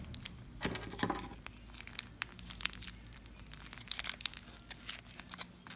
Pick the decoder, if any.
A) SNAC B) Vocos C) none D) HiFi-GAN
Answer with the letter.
C